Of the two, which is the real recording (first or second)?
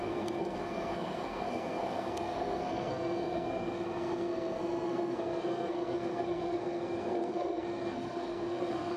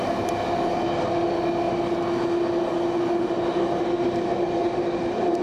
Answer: second